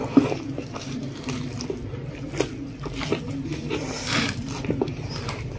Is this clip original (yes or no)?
yes